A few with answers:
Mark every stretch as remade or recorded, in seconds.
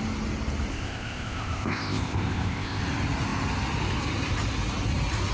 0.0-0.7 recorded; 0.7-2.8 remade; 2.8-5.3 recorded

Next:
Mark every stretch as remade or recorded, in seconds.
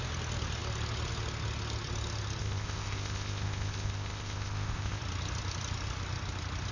0.0-2.4 recorded; 2.4-5.0 remade; 5.0-6.7 recorded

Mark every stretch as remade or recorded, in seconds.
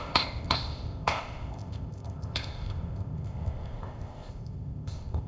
0.0-5.3 remade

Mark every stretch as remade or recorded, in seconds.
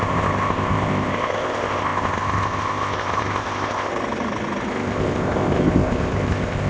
0.0-3.9 remade; 3.9-4.7 recorded; 4.7-6.7 remade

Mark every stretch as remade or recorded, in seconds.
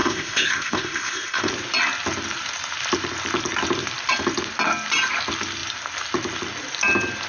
0.0-1.5 remade; 1.5-7.3 recorded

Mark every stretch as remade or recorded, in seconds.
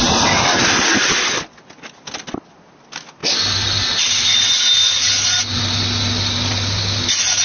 0.0-7.4 recorded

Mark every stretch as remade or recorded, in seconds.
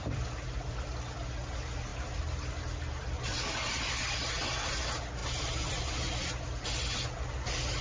0.0-7.8 recorded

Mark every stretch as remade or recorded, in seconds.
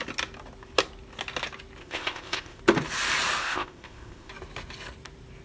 0.0-1.8 recorded; 1.8-2.6 remade; 2.6-3.4 recorded; 3.4-4.3 remade; 4.3-5.4 recorded